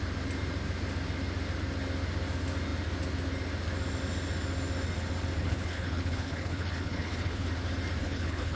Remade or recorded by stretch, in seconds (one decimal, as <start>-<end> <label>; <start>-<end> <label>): 0.0-5.4 recorded; 5.4-7.5 remade; 7.5-8.0 recorded; 8.0-8.6 remade